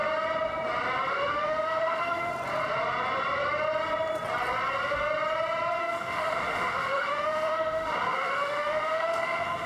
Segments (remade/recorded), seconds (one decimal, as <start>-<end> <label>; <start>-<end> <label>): 0.0-1.1 recorded; 1.1-2.3 remade; 2.3-5.8 recorded; 5.8-9.7 remade